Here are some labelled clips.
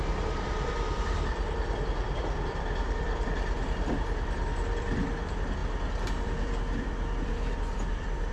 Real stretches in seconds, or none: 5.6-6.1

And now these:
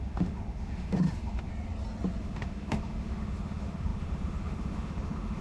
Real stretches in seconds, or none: 1.5-2.2

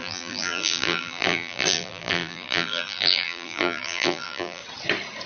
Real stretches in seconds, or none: 4.6-5.3

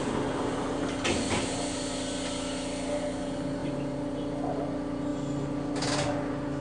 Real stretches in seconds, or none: 0.0-6.6

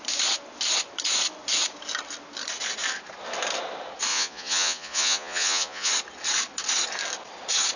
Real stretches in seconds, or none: 0.0-4.1; 5.9-7.8

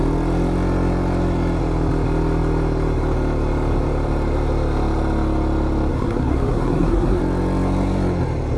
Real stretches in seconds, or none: 0.0-5.9; 7.2-8.6

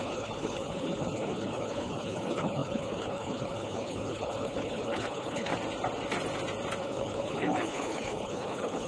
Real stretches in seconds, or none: 5.5-6.8

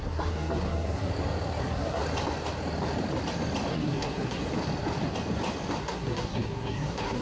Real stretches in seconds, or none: 1.1-1.6; 2.0-3.7; 4.4-5.8